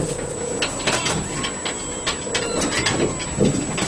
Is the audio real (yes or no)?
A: yes